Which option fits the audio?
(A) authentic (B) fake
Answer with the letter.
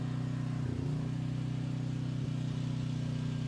A